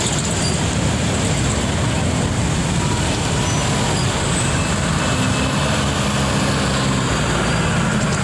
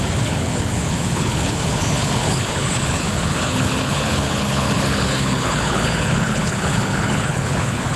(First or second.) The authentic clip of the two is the first